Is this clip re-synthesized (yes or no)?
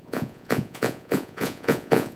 yes